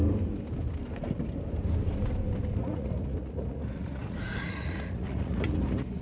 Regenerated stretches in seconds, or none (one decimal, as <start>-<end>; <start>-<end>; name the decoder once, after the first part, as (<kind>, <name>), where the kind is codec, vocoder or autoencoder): 2.6-6.0 (vocoder, Vocos)